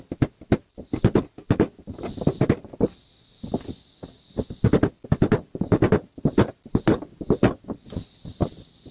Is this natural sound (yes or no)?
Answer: yes